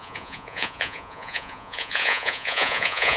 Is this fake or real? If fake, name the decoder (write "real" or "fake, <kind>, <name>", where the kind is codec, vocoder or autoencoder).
fake, vocoder, Vocos